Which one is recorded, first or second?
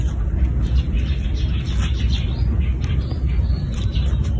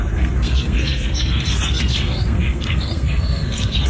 first